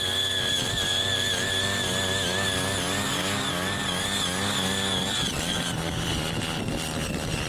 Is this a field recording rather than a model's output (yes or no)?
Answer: yes